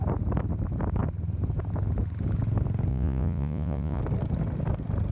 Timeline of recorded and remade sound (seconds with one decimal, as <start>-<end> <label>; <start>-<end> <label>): 0.0-2.9 recorded; 2.9-4.0 remade; 4.0-5.1 recorded